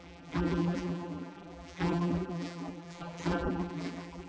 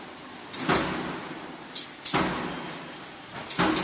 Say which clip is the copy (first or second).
first